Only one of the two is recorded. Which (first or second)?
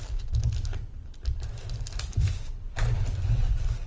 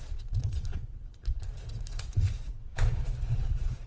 first